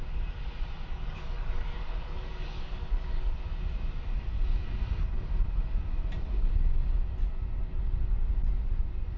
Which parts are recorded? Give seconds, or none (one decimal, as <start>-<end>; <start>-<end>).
0.0-0.9; 3.5-9.2